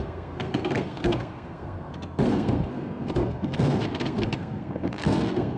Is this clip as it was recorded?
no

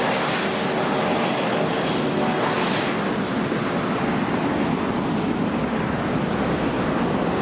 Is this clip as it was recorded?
yes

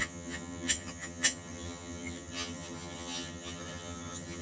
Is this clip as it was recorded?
no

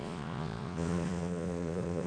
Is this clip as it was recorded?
no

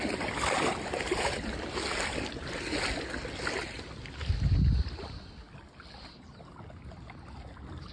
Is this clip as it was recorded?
yes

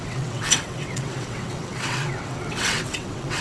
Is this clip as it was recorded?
no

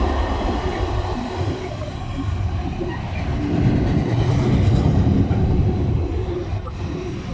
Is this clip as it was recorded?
yes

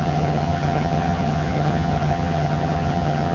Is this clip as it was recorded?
no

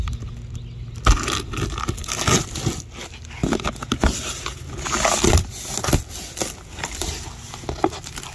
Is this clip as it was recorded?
yes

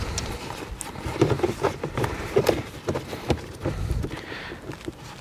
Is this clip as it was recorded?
yes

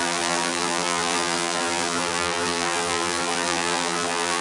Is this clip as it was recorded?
no